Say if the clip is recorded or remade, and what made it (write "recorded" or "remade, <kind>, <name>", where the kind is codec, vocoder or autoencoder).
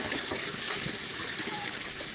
remade, codec, DAC